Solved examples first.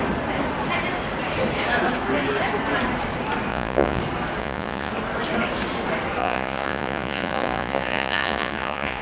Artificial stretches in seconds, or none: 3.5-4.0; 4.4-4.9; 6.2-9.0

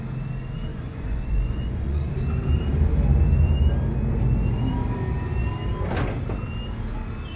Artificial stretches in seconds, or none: 0.7-2.1